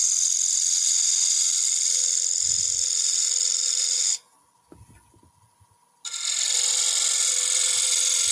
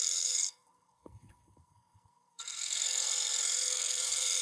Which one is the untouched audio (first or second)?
first